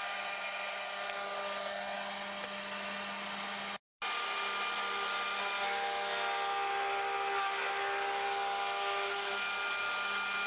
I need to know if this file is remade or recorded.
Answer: recorded